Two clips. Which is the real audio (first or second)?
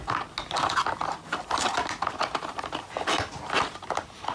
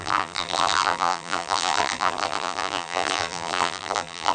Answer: first